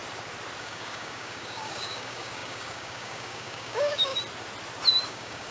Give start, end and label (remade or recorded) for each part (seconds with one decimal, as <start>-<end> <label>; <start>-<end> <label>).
0.0-0.6 recorded; 0.6-4.1 remade; 4.1-5.1 recorded; 5.1-5.5 remade